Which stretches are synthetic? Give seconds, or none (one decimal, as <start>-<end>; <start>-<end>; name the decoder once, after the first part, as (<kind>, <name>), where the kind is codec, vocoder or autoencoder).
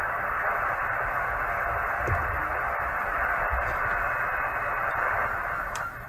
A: 0.0-6.1 (vocoder, BigVGAN v2)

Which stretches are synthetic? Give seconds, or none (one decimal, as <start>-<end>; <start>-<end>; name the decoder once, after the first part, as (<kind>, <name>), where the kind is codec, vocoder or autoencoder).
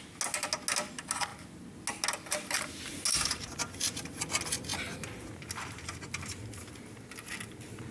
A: 3.1-4.2 (vocoder, BigVGAN v2)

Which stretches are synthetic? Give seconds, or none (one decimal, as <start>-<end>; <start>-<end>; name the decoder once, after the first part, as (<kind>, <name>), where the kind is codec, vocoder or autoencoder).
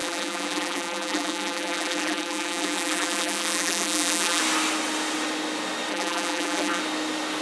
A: 0.0-4.4 (vocoder, BigVGAN v2); 5.9-6.8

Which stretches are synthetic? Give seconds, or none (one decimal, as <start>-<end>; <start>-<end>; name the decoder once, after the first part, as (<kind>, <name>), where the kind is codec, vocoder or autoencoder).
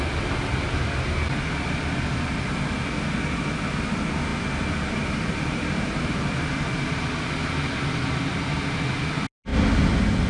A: 4.3-6.2 (vocoder, BigVGAN v2)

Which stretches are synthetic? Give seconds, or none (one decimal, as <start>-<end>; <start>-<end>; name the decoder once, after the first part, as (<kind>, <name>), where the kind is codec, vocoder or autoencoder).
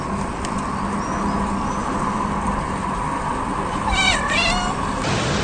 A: 1.8-2.8 (vocoder, BigVGAN v2)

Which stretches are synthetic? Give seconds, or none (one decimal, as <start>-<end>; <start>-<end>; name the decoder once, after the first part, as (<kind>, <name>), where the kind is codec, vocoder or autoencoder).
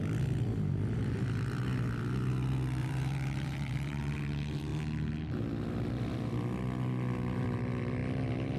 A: 2.8-4.0 (vocoder, BigVGAN v2)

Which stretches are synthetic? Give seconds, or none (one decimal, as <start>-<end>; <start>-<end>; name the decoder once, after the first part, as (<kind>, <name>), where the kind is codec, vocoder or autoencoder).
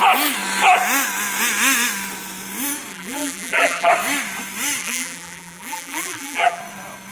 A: 2.9-3.9 (vocoder, BigVGAN v2); 4.8-6.6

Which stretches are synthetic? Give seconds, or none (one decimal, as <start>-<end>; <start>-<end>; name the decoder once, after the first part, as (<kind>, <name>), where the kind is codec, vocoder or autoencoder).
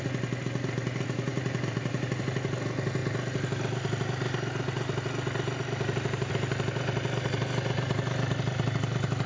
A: 1.3-2.2 (vocoder, BigVGAN v2)